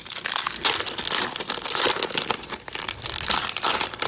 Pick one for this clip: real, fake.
real